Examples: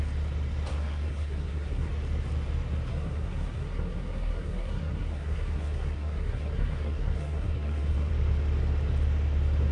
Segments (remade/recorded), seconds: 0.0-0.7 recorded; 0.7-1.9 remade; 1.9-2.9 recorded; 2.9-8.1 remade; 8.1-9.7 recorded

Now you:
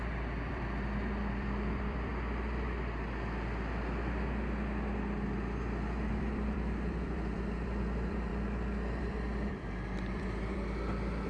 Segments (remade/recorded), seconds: 0.0-2.1 remade; 2.1-6.1 recorded; 6.1-8.3 remade; 8.3-9.0 recorded; 9.0-11.3 remade

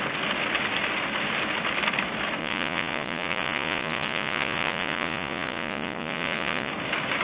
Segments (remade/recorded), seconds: 0.0-2.4 recorded; 2.4-6.7 remade; 6.7-7.2 recorded

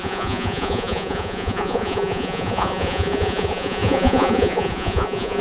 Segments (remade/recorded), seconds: 0.0-5.4 remade

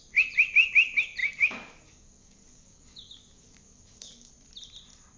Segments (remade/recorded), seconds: 0.0-1.2 recorded; 1.2-4.3 remade; 4.3-5.2 recorded

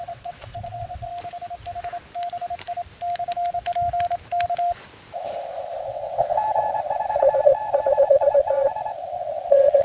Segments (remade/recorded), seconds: 0.0-1.1 remade; 1.1-5.8 recorded; 5.8-9.8 remade

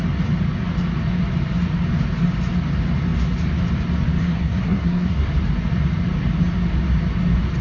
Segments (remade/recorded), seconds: 0.0-4.2 recorded; 4.2-5.3 remade; 5.3-7.6 recorded